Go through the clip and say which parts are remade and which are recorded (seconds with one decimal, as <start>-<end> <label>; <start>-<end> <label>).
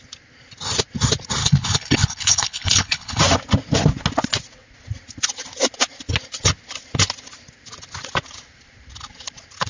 0.0-1.4 recorded; 1.4-3.2 remade; 3.2-9.7 recorded